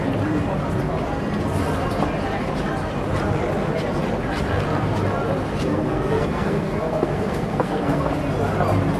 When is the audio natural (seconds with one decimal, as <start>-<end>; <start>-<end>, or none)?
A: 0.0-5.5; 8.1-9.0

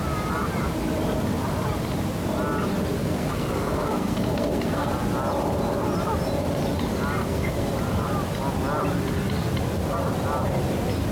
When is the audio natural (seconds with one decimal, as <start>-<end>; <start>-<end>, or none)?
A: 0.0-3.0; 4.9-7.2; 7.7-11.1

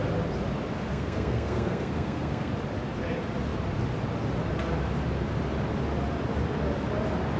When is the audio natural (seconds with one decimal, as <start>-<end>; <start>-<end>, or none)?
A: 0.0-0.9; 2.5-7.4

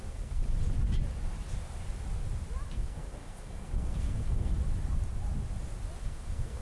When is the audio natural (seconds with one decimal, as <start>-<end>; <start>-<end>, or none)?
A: 0.4-2.7; 4.5-6.0